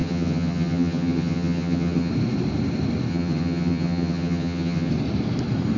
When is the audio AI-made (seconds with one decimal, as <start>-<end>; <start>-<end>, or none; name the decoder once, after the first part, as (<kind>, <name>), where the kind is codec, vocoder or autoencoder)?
0.0-2.1 (vocoder, HiFi-GAN); 3.1-4.9

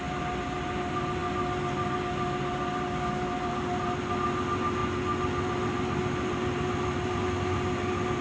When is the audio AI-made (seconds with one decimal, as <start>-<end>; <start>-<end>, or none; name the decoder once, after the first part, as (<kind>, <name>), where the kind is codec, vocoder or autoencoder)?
none

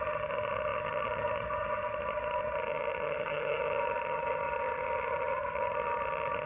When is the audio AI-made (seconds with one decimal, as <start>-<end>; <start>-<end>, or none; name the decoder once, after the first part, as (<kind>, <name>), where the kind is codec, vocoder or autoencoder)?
0.0-6.5 (vocoder, HiFi-GAN)